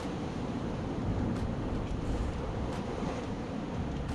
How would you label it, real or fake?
fake